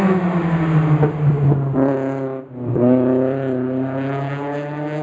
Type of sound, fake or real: real